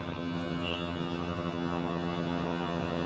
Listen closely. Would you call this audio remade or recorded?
remade